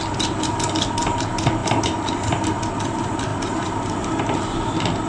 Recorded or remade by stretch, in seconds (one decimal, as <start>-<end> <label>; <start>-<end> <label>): 0.0-5.1 recorded